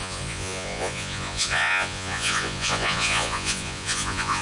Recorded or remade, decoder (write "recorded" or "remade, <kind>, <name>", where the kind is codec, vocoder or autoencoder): remade, vocoder, Vocos